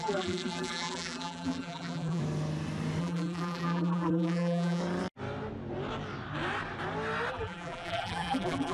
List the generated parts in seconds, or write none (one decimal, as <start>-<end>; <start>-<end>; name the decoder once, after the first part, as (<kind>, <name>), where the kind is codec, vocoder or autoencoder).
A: 0.0-2.2 (vocoder, BigVGAN v2); 3.0-4.8; 7.3-8.7